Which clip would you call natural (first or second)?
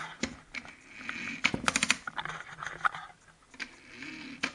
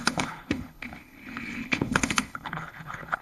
first